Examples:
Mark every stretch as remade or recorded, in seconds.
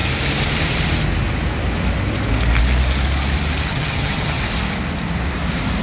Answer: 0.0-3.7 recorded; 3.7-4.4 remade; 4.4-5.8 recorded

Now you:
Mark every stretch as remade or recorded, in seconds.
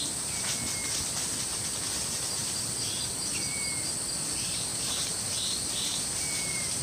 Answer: 0.0-4.7 recorded; 4.7-6.8 remade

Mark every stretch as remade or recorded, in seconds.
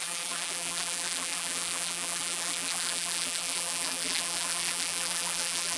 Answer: 0.0-5.8 remade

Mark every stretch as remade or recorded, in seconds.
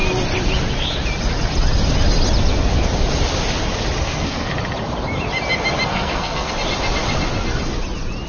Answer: 0.0-4.0 recorded; 4.0-4.5 remade; 4.5-5.9 recorded; 5.9-6.5 remade; 6.5-8.3 recorded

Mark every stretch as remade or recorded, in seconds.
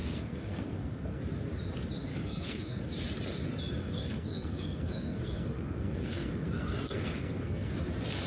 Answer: 0.0-1.2 remade; 1.2-2.1 recorded; 2.1-2.8 remade; 2.8-3.8 recorded; 3.8-7.7 remade; 7.7-8.3 recorded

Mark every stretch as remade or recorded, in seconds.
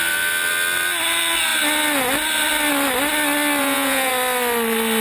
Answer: 0.0-3.6 recorded; 3.6-4.1 remade; 4.1-5.0 recorded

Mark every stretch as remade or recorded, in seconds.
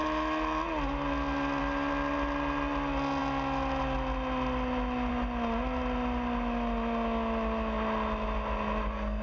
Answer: 0.0-9.2 recorded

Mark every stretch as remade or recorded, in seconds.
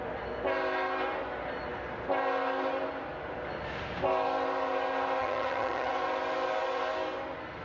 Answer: 0.0-5.2 recorded; 5.2-5.9 remade; 5.9-7.6 recorded